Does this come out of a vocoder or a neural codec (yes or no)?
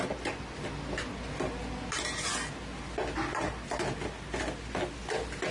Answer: no